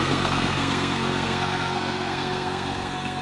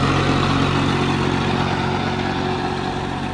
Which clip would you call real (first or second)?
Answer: second